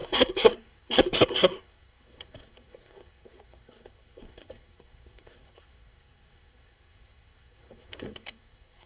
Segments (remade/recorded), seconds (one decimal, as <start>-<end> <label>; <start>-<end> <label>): 0.0-8.9 remade